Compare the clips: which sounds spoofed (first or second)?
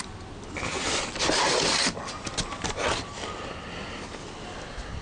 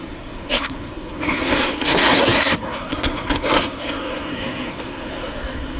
second